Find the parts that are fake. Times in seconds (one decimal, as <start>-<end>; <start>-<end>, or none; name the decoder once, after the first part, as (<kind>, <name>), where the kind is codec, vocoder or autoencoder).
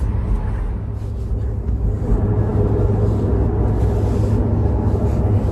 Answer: none